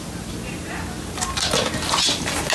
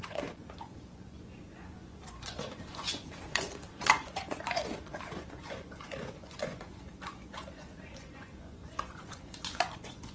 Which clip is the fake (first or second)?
second